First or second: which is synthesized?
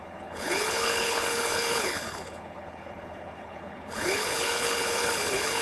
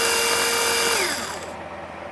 first